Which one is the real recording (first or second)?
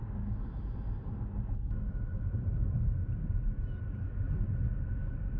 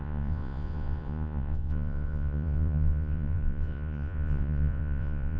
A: first